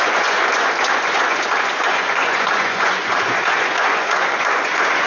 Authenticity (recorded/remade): remade